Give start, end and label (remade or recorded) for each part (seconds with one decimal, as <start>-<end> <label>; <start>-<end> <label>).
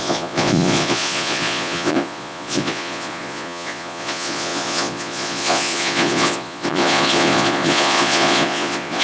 0.0-9.0 remade